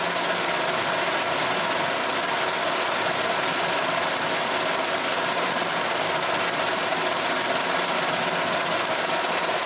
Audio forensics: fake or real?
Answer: real